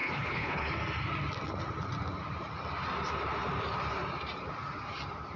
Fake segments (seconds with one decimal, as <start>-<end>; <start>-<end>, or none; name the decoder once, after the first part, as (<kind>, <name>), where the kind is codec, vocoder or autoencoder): 0.0-0.7 (codec, HILCodec)